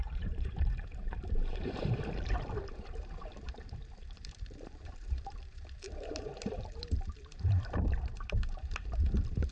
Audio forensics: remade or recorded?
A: remade